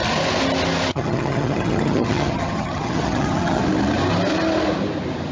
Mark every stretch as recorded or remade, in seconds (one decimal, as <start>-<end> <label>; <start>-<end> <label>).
0.0-0.9 recorded; 0.9-3.6 remade; 3.6-5.3 recorded